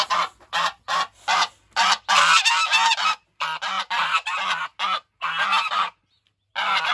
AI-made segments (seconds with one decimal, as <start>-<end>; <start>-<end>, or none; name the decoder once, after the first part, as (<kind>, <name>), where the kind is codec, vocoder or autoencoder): 5.5-6.2 (vocoder, BigVGAN v2)